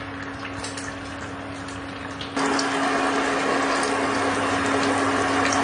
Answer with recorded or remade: recorded